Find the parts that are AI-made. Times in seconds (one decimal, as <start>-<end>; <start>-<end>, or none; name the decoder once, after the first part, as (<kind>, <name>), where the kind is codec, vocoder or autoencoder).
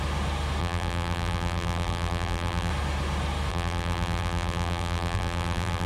0.6-2.7 (vocoder, BigVGAN v2); 3.5-5.9